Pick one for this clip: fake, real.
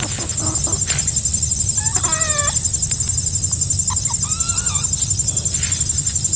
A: real